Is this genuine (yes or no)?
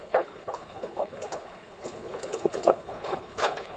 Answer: no